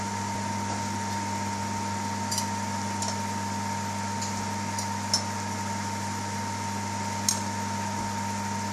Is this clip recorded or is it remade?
recorded